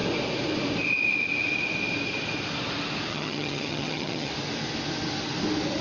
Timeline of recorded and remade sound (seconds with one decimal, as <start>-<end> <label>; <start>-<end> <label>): 0.0-3.1 recorded; 3.1-4.3 remade; 4.3-5.8 recorded